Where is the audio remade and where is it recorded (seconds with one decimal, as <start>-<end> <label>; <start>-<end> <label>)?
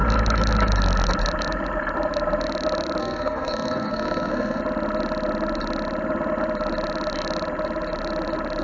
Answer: 0.0-3.0 recorded; 3.0-4.6 remade; 4.6-8.6 recorded